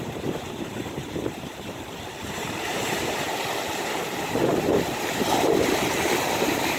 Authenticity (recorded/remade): remade